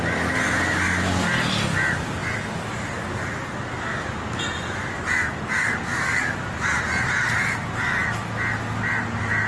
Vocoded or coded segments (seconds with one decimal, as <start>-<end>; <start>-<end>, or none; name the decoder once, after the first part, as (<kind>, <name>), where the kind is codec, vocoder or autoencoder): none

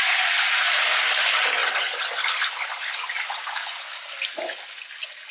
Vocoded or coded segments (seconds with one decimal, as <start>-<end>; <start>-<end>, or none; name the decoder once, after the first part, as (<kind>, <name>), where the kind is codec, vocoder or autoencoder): none

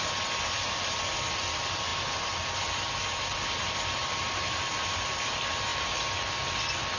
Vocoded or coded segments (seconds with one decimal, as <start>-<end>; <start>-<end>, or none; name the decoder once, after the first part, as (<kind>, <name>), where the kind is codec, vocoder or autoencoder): 0.0-5.7 (vocoder, BigVGAN v2); 6.6-7.0

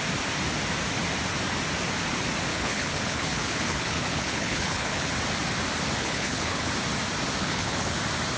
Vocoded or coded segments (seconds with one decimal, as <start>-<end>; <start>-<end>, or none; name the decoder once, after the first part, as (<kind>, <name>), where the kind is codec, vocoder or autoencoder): 2.5-5.1 (codec, HILCodec); 6.0-6.7; 7.4-8.0

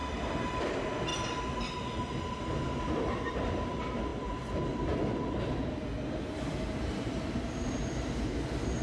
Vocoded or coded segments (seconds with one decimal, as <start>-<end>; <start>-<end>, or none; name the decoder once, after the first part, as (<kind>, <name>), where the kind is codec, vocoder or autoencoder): none

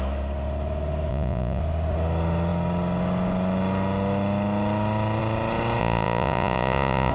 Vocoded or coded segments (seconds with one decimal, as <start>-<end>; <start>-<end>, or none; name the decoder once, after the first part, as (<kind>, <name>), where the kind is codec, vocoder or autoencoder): 1.1-1.6 (vocoder, Vocos); 5.8-7.1

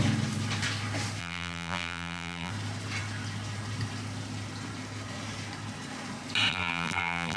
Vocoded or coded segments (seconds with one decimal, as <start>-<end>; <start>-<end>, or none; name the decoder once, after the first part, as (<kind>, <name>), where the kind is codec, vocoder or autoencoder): 1.2-2.5 (vocoder, BigVGAN v2); 6.5-7.4